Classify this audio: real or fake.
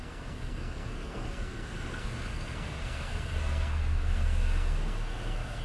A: fake